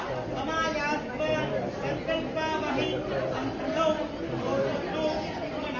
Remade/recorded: recorded